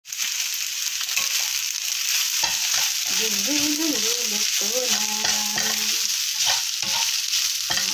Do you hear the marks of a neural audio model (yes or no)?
no